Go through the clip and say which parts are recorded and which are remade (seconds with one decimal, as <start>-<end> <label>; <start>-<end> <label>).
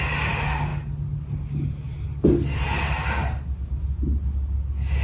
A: 0.0-5.0 recorded